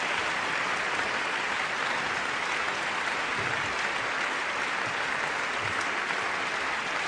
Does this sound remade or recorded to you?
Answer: recorded